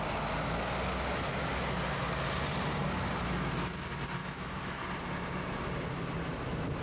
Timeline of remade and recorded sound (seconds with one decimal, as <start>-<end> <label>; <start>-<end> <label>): 0.0-4.2 recorded; 4.2-4.8 remade; 4.8-6.8 recorded